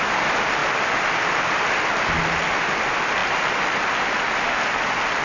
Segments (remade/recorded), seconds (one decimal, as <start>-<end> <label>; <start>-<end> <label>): 0.0-5.2 recorded